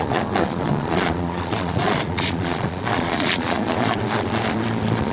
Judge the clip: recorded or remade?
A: remade